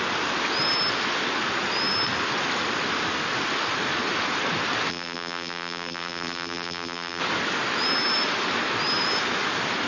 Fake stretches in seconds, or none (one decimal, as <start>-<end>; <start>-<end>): 4.9-7.2